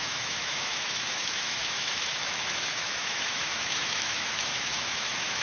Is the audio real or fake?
fake